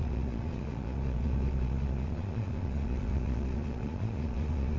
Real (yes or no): no